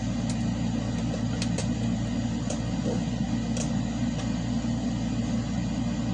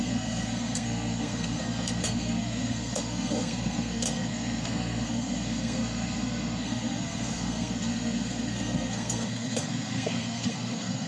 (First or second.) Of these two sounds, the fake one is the second